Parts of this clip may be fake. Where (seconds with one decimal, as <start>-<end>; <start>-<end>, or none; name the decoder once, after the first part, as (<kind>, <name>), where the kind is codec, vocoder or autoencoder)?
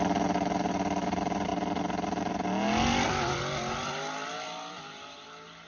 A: none